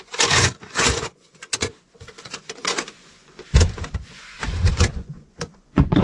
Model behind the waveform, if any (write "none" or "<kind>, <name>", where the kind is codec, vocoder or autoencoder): vocoder, Vocos